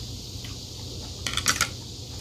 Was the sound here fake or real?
real